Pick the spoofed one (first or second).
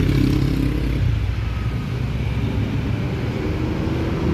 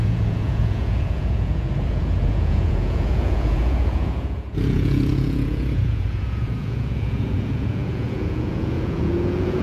second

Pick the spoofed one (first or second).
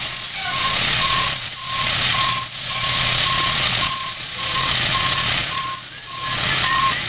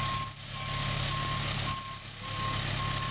first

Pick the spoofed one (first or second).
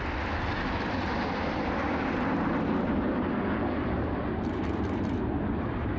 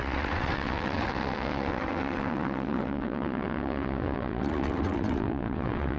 second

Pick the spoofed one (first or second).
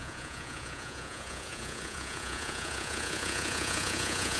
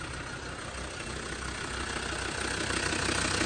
first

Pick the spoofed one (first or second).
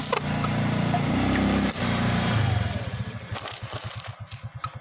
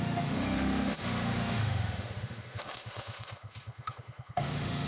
second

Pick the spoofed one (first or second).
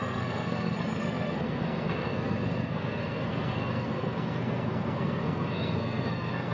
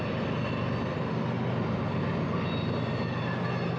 first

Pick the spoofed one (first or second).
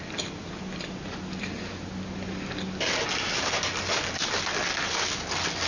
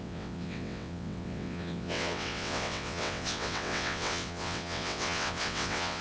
second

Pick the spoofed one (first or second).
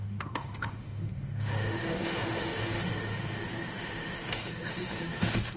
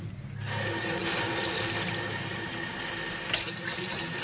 first